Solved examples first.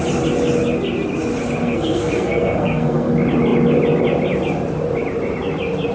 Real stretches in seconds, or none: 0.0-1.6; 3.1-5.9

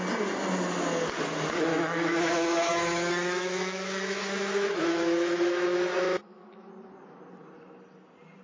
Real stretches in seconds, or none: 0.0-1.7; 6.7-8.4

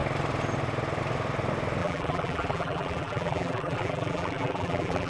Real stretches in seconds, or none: 0.0-1.8

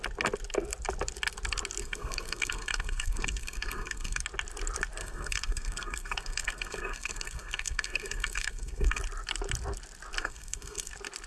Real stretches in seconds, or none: 0.0-1.8; 4.2-5.0; 9.0-10.2; 10.9-11.3

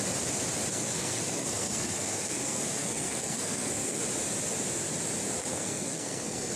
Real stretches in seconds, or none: 0.0-0.7; 4.0-5.5